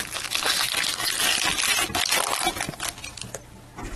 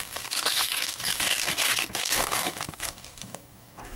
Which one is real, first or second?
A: first